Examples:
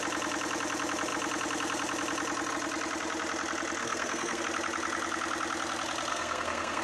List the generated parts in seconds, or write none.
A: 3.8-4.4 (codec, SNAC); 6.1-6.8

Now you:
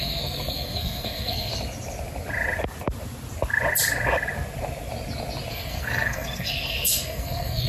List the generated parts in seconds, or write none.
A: 0.0-1.5 (codec, SNAC); 5.5-7.7

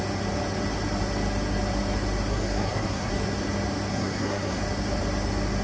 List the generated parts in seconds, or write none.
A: 2.3-3.1 (codec, SNAC); 3.9-4.6

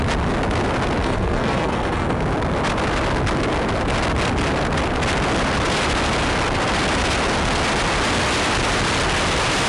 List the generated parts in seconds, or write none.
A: 1.0-2.2 (codec, SNAC)

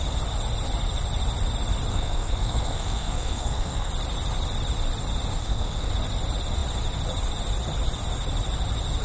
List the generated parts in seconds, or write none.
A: 1.9-3.9 (codec, SNAC); 5.4-5.9

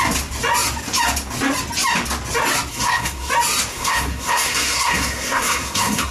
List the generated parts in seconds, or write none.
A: 2.7-3.3 (codec, SNAC); 3.7-6.1